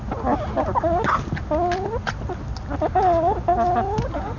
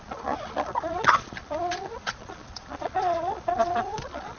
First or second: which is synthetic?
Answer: second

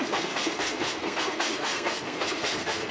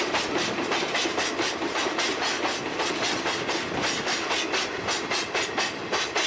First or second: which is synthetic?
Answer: first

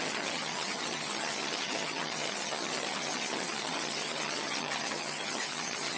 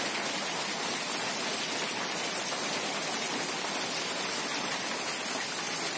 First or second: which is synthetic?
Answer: first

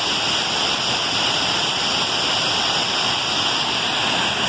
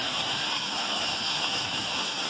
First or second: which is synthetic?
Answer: second